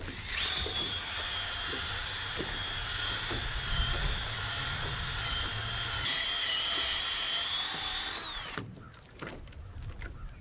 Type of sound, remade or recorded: recorded